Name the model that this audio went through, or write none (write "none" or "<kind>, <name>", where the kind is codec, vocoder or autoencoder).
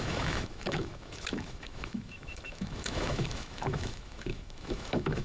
autoencoder, DAC-VAE